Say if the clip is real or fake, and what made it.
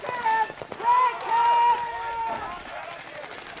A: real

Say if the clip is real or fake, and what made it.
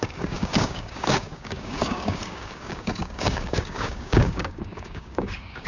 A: fake, codec, DAC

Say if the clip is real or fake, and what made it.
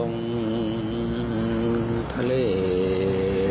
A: real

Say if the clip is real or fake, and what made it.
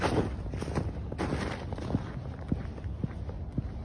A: real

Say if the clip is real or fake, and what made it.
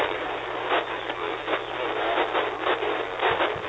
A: real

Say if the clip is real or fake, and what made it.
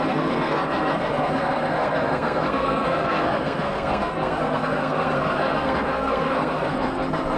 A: fake, codec, SNAC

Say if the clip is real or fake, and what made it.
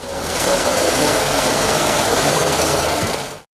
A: fake, codec, SNAC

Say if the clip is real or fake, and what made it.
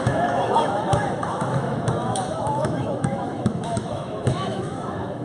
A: fake, autoencoder, DAC-VAE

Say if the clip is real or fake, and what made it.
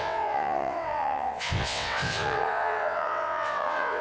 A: fake, vocoder, WaveNeXt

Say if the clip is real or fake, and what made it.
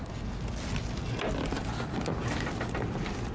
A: real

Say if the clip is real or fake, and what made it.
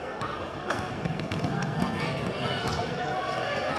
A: fake, codec, SNAC